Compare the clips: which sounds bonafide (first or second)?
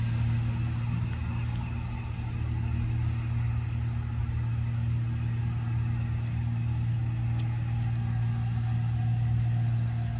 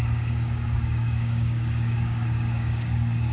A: first